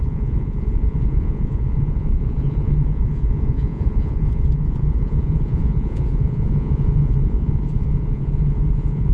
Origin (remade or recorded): remade